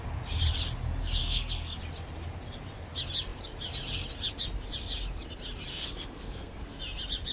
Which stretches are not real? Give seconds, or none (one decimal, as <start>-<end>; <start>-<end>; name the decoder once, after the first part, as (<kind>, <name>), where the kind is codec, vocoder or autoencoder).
1.2-1.8 (codec, SNAC); 5.7-6.8